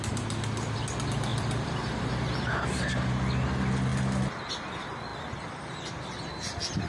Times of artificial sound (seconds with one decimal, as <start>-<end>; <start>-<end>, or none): 1.3-2.1